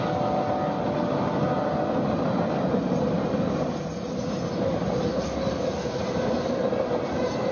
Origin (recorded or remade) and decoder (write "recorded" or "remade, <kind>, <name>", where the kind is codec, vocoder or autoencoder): recorded